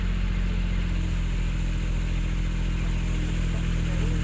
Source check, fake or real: real